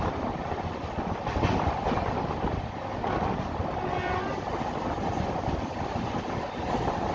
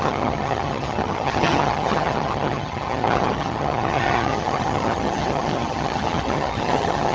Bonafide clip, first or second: first